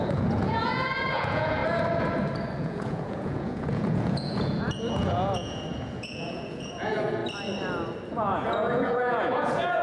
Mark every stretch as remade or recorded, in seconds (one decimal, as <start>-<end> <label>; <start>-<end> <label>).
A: 0.0-1.6 remade; 1.6-2.6 recorded; 2.6-7.2 remade; 7.2-8.1 recorded; 8.1-9.8 remade

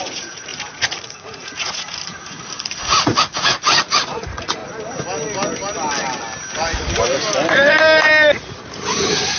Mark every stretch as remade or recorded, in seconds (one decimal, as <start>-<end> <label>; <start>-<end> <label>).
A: 0.0-4.6 remade; 4.6-8.8 recorded; 8.8-9.4 remade

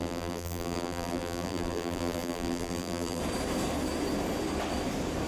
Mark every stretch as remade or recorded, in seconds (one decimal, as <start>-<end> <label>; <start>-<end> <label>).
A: 0.0-3.2 remade; 3.2-5.3 recorded

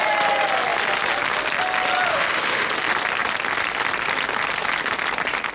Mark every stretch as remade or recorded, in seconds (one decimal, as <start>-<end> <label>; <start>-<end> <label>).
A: 0.0-2.1 recorded; 2.1-2.7 remade; 2.7-5.5 recorded

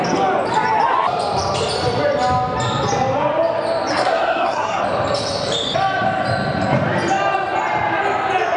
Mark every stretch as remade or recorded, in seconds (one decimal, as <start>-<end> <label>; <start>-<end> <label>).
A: 0.0-3.9 recorded; 3.9-4.8 remade; 4.8-8.6 recorded

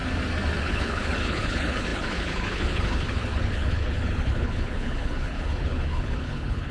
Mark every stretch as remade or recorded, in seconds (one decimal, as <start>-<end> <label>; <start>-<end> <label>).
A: 0.0-0.6 recorded; 0.6-6.7 remade

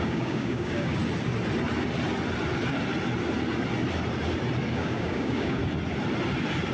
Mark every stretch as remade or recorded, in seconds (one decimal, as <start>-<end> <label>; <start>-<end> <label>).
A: 0.0-1.0 remade; 1.0-4.7 recorded; 4.7-5.6 remade; 5.6-6.7 recorded